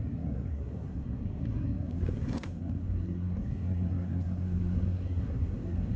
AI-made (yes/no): yes